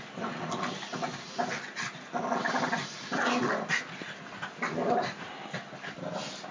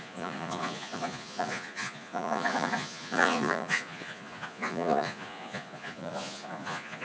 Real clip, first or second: first